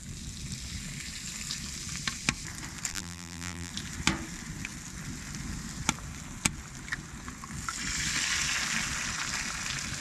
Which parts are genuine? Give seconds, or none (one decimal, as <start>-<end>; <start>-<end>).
0.0-2.9; 3.7-10.0